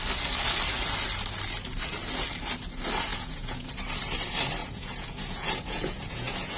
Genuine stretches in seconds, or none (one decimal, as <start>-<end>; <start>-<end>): 0.0-3.1; 3.7-4.6